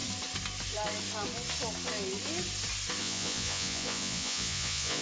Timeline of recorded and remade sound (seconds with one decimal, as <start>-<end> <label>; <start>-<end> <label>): 0.0-3.0 recorded; 3.0-5.0 remade